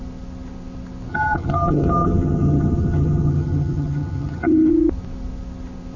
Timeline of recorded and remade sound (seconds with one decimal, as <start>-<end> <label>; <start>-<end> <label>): 0.0-1.1 recorded; 1.1-4.7 remade; 4.7-6.0 recorded